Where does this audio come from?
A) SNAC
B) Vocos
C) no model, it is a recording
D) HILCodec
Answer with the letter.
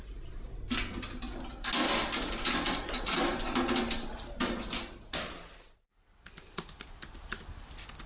C